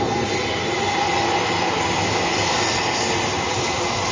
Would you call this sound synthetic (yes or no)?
no